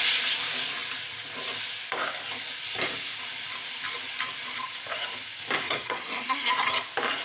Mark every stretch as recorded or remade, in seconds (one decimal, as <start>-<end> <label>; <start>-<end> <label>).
0.0-5.6 recorded; 5.6-6.5 remade; 6.5-7.2 recorded

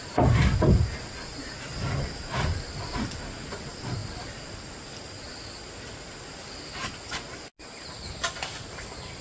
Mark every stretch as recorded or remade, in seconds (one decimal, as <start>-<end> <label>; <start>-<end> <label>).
0.0-9.2 recorded

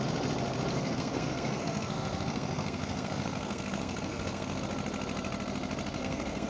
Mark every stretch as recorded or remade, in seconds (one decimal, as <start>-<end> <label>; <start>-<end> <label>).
0.0-0.7 recorded; 0.7-4.6 remade; 4.6-6.0 recorded; 6.0-6.5 remade